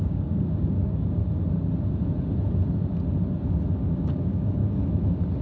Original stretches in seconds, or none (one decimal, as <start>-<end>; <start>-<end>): 1.2-3.9; 4.6-5.4